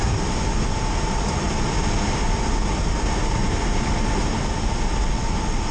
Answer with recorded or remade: recorded